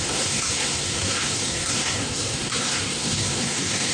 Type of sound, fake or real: fake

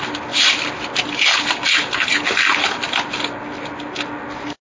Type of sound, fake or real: real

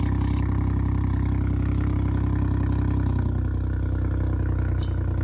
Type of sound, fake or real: real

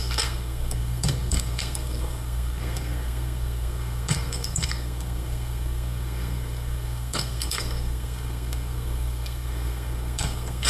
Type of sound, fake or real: fake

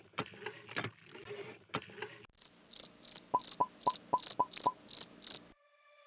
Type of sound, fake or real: real